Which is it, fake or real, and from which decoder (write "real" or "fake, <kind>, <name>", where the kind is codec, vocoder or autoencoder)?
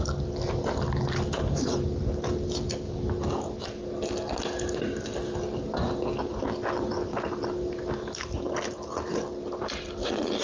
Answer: real